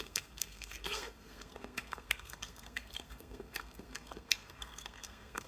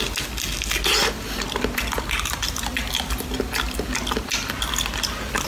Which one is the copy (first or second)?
first